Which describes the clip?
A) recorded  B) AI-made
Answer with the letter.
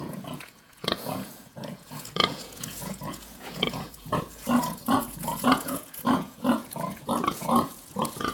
B